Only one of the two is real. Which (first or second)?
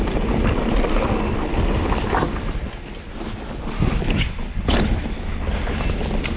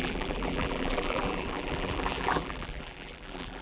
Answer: first